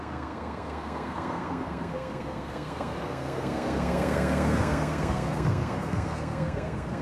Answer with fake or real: fake